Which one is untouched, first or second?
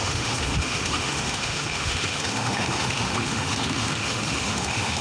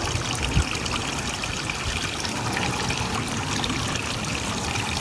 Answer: second